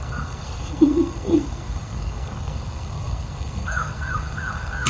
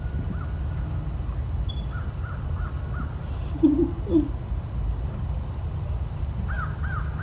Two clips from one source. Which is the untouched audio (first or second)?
second